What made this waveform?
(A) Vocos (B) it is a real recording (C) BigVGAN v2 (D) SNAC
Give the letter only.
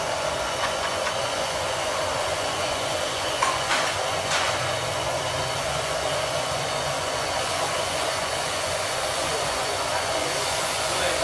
A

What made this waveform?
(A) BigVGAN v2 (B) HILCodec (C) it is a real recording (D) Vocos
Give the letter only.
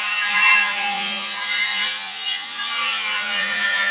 D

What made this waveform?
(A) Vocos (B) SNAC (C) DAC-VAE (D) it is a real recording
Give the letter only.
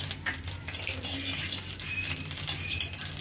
D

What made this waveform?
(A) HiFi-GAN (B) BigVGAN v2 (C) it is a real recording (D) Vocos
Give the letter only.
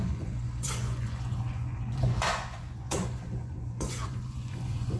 D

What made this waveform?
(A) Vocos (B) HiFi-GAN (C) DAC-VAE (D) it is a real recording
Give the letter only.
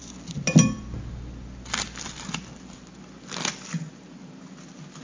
D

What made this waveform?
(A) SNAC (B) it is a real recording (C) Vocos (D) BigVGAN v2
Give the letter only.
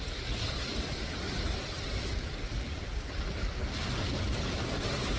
B